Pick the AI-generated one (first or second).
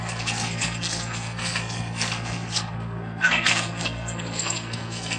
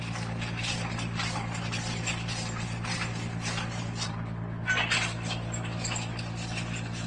first